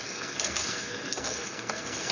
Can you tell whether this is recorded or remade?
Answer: remade